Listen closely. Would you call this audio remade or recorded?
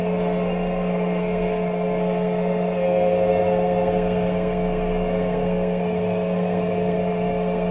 remade